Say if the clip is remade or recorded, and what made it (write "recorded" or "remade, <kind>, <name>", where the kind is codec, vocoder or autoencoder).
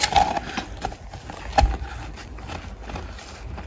recorded